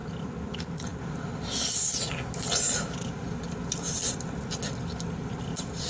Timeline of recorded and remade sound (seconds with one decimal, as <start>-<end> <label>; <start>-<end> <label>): 0.0-5.9 recorded